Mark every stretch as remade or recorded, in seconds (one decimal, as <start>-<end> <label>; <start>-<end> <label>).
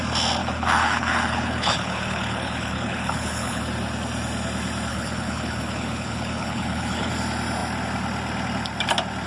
0.0-0.4 recorded; 0.4-3.6 remade; 3.6-4.9 recorded; 4.9-7.1 remade; 7.1-9.3 recorded